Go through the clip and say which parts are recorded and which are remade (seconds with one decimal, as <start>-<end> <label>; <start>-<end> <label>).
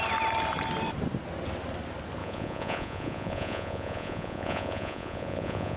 0.0-2.2 recorded; 2.2-5.8 remade